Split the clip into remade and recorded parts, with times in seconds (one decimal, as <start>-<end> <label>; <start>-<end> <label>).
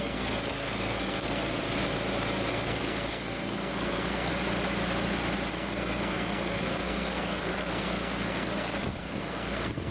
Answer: 0.0-1.6 remade; 1.6-2.5 recorded; 2.5-4.3 remade; 4.3-5.5 recorded; 5.5-9.9 remade